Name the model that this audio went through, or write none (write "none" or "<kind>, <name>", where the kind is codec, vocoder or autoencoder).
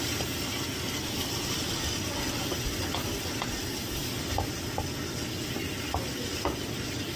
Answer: none